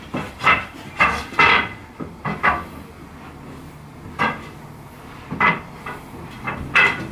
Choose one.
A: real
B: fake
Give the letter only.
A